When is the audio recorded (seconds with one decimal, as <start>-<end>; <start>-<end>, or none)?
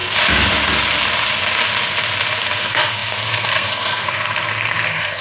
0.0-2.6